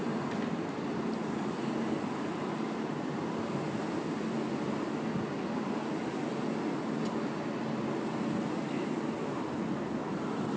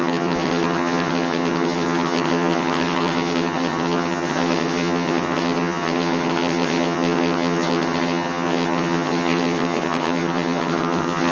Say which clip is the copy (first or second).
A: second